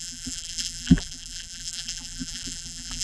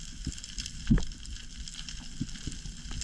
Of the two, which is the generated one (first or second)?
first